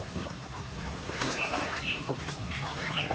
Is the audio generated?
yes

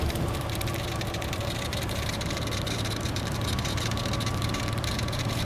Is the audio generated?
yes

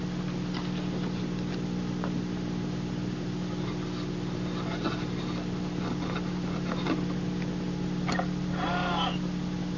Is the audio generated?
no